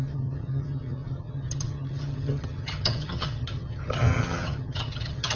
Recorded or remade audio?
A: remade